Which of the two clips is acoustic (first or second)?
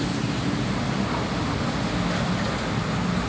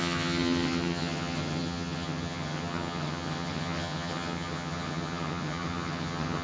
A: first